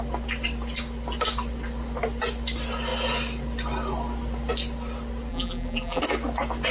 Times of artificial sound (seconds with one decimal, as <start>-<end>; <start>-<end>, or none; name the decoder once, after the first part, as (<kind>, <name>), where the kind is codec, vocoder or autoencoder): 5.3-6.0 (vocoder, BigVGAN v2)